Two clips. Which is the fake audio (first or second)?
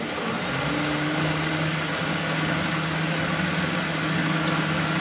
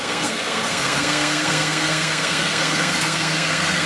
second